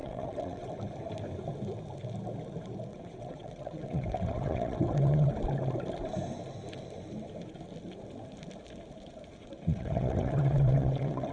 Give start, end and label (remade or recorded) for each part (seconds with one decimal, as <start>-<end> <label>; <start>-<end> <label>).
0.0-0.7 remade; 0.7-2.9 recorded; 2.9-5.3 remade; 5.3-9.4 recorded; 9.4-11.3 remade